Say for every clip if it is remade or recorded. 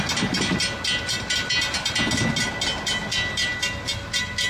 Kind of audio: recorded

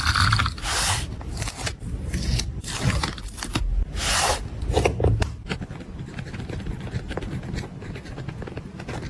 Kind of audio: recorded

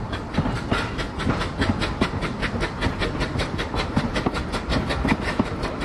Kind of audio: recorded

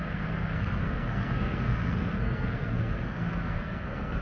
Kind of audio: remade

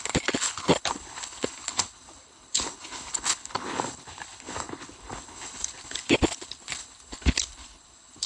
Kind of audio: remade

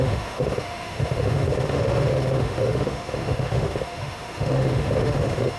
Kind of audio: remade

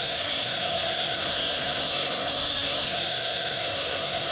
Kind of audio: remade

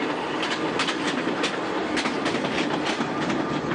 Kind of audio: recorded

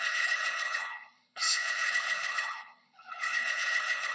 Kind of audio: remade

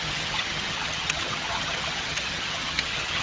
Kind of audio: remade